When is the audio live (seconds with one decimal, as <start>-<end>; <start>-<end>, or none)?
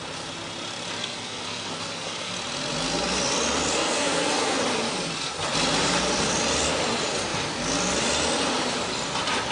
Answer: 0.0-1.0; 2.3-3.8; 4.6-9.5